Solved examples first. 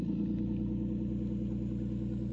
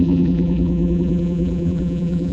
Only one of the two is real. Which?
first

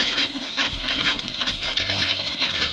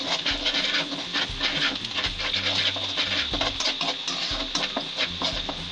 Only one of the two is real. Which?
second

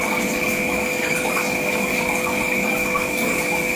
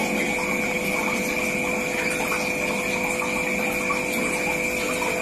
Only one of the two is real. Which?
second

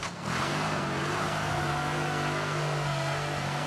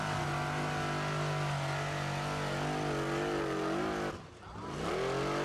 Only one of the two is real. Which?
second